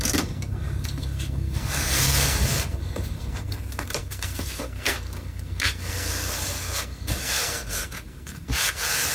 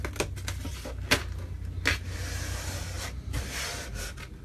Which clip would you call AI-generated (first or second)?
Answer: first